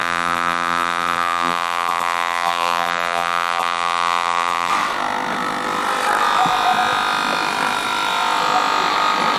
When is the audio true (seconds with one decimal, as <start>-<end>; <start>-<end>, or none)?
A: 4.7-9.4